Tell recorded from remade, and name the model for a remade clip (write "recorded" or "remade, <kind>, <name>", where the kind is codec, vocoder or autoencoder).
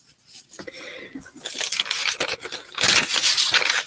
recorded